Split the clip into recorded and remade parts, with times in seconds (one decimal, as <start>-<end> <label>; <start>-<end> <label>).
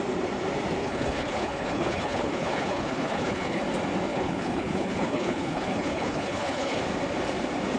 0.0-0.8 recorded; 0.8-3.6 remade; 3.6-4.1 recorded; 4.1-6.8 remade; 6.8-7.8 recorded